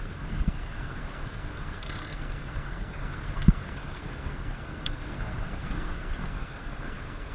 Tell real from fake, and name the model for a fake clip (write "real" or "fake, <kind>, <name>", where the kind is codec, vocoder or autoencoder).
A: fake, codec, SNAC